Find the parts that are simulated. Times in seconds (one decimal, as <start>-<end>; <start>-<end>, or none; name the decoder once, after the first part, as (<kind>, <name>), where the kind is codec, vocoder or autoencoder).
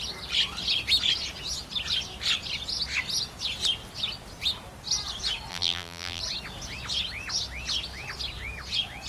5.5-6.2 (vocoder, BigVGAN v2)